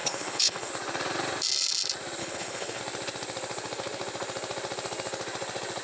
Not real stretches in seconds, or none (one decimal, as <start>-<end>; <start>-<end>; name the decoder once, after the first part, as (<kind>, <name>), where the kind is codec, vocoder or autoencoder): 0.0-0.7 (codec, HILCodec); 2.2-2.8

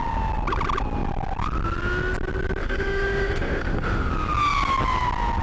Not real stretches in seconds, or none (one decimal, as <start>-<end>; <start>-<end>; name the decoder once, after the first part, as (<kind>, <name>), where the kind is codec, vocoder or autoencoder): 2.6-4.1 (autoencoder, DAC-VAE)